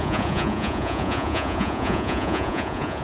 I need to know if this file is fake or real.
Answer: fake